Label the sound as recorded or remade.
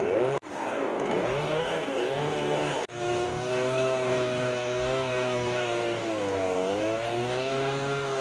remade